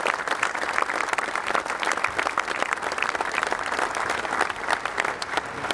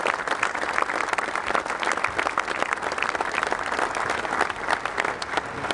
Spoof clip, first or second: first